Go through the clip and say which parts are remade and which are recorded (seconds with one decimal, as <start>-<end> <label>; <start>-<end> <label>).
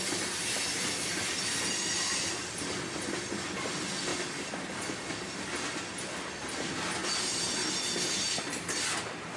0.0-9.4 recorded